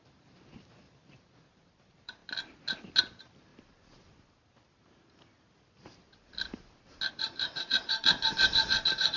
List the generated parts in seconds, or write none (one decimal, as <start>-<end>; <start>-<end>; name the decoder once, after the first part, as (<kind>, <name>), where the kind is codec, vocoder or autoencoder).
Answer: 0.0-2.2 (vocoder, BigVGAN v2); 3.0-3.5; 7.1-9.2